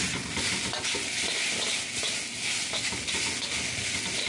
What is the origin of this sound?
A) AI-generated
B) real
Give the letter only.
B